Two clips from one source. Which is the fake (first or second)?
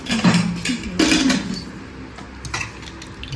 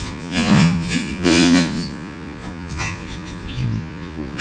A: second